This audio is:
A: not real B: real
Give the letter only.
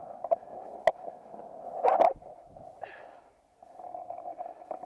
B